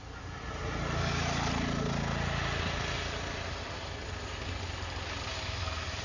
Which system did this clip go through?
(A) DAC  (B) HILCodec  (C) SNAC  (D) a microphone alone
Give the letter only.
D